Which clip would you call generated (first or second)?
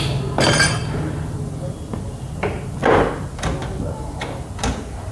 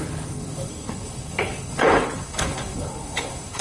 second